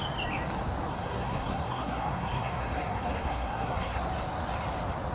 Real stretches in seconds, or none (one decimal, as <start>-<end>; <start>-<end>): 0.0-0.9; 4.0-5.1